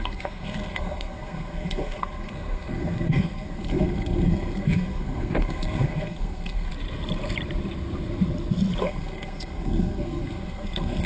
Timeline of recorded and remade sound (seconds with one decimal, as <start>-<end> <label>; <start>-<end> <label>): 0.0-6.7 remade; 6.7-8.8 recorded; 8.8-11.1 remade